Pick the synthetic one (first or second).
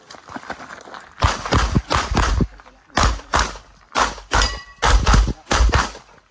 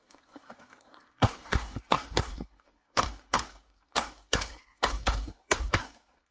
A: second